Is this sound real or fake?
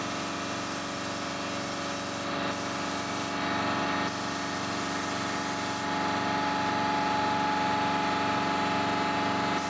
real